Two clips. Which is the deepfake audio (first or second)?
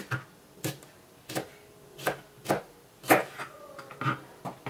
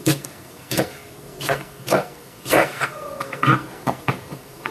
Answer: second